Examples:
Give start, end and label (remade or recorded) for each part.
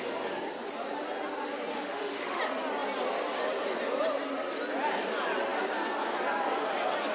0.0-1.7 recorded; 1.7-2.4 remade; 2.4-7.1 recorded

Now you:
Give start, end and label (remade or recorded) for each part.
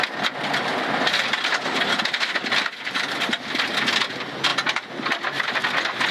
0.0-6.1 recorded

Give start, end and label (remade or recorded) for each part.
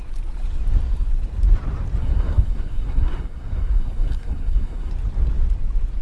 0.0-2.0 recorded; 2.0-4.9 remade; 4.9-6.0 recorded